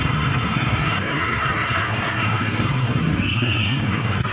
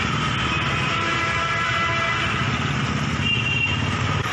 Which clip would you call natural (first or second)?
second